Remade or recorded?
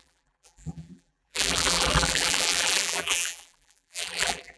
remade